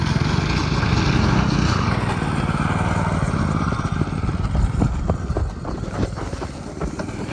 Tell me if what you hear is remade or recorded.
recorded